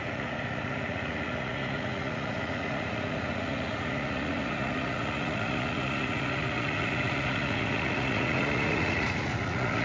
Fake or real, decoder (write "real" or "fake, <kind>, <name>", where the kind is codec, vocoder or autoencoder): fake, vocoder, Vocos